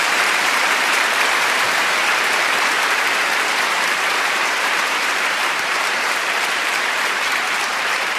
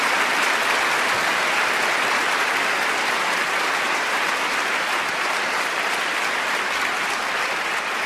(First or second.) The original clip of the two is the second